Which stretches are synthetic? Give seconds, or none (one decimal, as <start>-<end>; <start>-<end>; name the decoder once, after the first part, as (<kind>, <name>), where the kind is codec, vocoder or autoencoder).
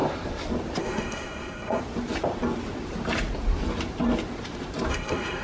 0.8-1.8 (codec, SNAC); 4.9-5.4